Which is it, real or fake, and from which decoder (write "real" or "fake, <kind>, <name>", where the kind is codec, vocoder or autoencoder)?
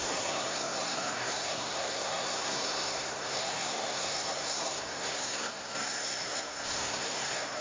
fake, codec, SNAC